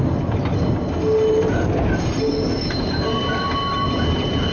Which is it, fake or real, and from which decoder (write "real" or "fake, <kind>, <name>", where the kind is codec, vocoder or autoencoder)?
real